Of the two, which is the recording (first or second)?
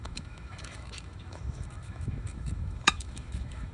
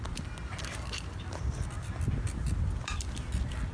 second